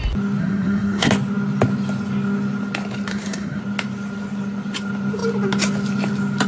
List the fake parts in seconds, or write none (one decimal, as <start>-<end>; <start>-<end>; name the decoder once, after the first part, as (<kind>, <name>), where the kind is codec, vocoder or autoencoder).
0.4-1.1 (codec, SNAC); 3.1-3.6